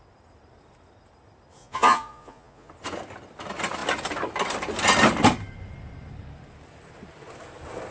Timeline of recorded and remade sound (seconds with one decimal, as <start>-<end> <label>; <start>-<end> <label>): 0.0-1.6 recorded; 1.6-2.7 remade; 2.7-7.9 recorded